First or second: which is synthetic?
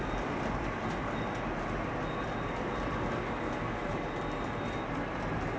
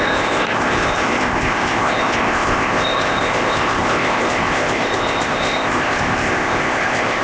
second